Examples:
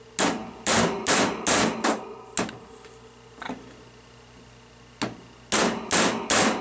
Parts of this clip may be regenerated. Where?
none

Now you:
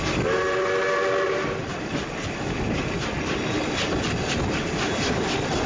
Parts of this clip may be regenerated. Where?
none

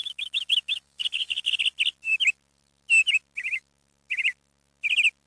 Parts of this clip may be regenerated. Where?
0.0-1.6 (autoencoder, DAC-VAE)

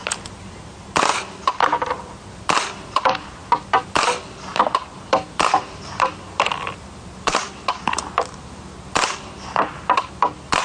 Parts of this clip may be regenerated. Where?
none

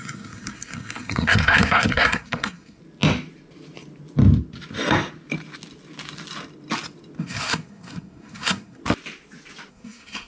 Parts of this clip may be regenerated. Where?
0.0-2.8 (codec, SNAC); 7.2-8.8; 9.7-10.3

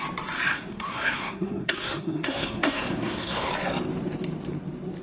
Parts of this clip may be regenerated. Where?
0.5-3.5 (codec, SNAC)